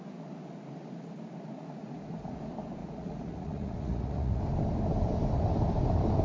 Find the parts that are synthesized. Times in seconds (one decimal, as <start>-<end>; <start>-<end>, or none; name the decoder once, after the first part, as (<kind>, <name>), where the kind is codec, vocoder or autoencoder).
1.8-2.4 (vocoder, Vocos); 2.8-4.4

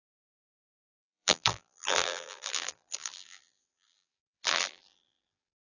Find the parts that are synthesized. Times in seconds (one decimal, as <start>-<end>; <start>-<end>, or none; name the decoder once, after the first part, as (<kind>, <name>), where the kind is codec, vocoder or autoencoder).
0.0-5.6 (vocoder, BigVGAN v2)

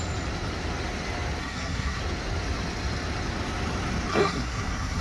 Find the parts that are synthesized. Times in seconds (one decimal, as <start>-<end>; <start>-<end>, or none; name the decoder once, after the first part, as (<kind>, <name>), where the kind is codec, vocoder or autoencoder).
1.4-2.0 (codec, SNAC); 4.1-5.0

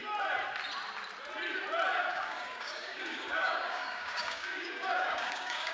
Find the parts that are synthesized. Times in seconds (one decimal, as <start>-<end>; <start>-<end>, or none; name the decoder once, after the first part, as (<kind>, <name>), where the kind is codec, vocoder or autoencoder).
2.1-5.7 (codec, DAC)

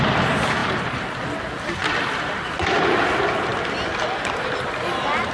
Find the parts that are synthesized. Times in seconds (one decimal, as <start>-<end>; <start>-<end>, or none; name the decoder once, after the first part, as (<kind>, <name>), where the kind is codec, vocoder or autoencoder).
none

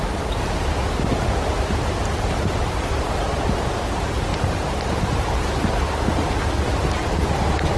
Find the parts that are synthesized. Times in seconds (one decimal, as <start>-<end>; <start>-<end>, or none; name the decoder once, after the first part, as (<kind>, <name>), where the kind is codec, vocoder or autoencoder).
0.8-3.8 (vocoder, BigVGAN v2); 4.3-5.1

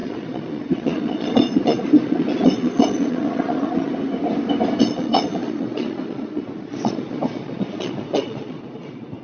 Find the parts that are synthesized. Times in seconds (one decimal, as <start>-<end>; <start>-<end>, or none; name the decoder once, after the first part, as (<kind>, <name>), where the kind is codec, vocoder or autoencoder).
0.0-3.9 (vocoder, Vocos); 4.8-9.2